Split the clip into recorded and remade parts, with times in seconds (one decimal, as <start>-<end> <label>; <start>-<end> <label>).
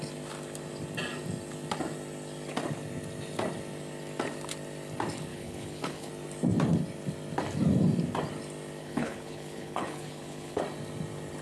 0.0-5.3 recorded; 5.3-6.1 remade; 6.1-8.8 recorded; 8.8-10.6 remade; 10.6-11.4 recorded